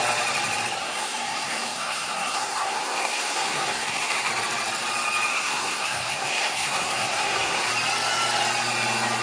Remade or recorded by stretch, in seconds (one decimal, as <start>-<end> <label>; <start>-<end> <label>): 0.0-0.8 recorded; 0.8-4.3 remade; 4.3-5.3 recorded; 5.3-7.7 remade; 7.7-9.2 recorded